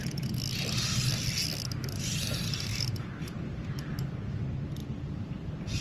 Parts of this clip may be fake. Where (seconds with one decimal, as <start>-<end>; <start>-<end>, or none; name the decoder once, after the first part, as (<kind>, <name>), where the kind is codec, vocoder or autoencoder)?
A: 2.7-3.9 (vocoder, BigVGAN v2); 4.8-5.3